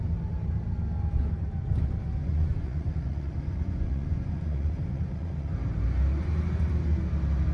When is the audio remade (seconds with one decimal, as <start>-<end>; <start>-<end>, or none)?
2.3-5.5